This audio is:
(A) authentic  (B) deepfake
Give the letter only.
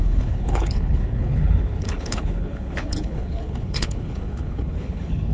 B